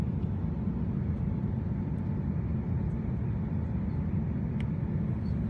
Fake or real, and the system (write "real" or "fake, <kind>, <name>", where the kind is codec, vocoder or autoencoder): real